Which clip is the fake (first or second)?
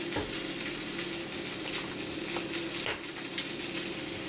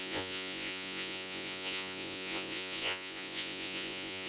second